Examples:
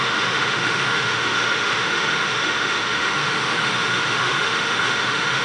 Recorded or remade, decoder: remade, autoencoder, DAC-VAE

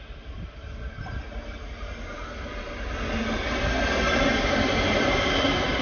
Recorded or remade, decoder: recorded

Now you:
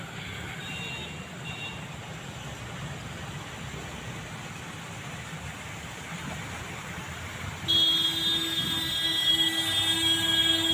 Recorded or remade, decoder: recorded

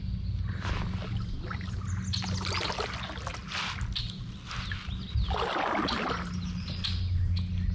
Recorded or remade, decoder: recorded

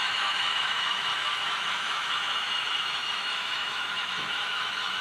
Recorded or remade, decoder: remade, autoencoder, DAC-VAE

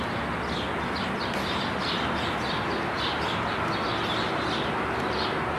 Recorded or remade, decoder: recorded